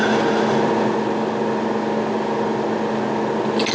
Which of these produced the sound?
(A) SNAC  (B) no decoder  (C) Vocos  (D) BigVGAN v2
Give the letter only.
B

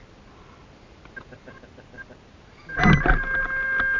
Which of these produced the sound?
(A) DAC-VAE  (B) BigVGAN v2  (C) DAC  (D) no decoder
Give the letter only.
D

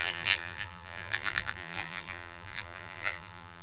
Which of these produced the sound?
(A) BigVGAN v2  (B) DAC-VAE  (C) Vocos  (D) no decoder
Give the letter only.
A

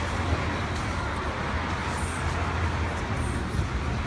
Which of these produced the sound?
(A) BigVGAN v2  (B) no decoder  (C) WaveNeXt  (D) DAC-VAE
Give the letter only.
B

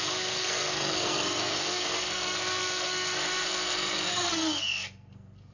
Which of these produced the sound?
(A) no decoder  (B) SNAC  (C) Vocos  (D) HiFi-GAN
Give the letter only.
B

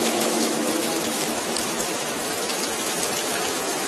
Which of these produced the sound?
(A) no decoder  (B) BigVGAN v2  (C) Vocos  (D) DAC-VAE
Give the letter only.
D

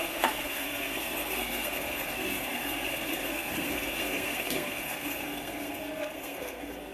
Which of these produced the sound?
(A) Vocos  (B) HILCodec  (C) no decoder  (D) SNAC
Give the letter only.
D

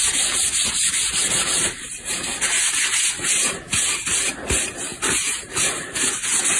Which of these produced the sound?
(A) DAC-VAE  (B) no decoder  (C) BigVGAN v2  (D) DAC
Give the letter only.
C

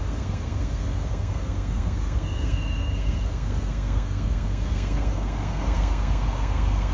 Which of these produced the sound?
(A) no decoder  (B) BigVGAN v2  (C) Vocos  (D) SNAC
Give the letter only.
D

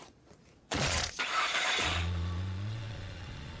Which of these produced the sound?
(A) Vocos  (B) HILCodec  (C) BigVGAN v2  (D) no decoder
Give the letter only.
A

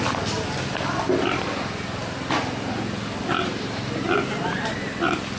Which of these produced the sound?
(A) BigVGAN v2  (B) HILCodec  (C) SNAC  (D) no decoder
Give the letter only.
D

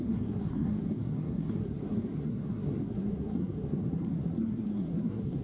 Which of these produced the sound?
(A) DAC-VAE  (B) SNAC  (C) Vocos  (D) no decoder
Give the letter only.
B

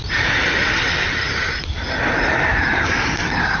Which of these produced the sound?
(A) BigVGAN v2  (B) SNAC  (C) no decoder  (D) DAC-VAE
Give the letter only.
C